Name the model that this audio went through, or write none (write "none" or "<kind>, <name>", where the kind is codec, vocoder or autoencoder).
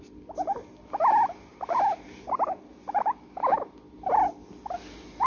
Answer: none